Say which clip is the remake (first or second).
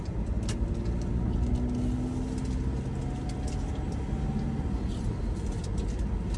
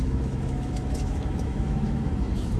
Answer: second